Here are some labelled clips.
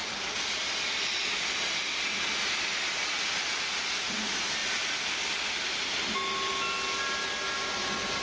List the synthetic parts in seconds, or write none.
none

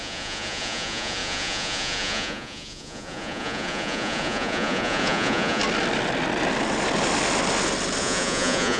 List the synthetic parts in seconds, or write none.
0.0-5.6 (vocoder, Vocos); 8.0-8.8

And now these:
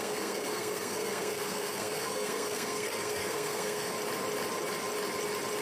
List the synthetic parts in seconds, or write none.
0.0-3.9 (codec, SNAC)